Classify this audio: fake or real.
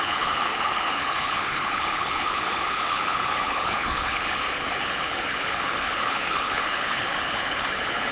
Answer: fake